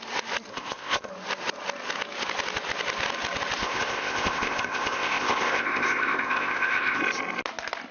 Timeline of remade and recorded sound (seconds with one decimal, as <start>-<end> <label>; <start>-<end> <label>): 0.0-0.5 recorded; 0.5-1.1 remade; 1.1-3.6 recorded; 3.6-7.0 remade; 7.0-7.9 recorded